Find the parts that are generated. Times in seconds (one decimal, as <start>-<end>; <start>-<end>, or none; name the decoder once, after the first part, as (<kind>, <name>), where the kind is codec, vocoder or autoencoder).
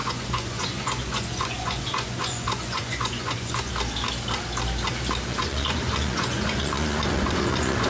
0.0-3.7 (vocoder, Vocos); 5.3-7.9